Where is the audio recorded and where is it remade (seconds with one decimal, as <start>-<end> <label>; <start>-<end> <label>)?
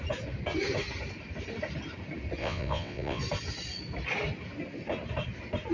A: 0.0-2.4 recorded; 2.4-3.2 remade; 3.2-5.7 recorded